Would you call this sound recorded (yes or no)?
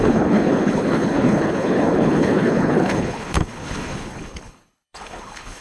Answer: no